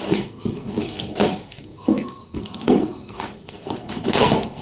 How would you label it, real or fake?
fake